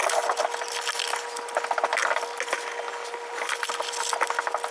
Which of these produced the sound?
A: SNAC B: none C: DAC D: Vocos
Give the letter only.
B